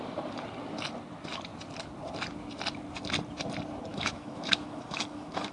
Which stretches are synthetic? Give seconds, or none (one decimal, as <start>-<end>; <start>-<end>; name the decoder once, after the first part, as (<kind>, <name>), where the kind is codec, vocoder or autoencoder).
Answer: 3.9-5.5 (autoencoder, DAC-VAE)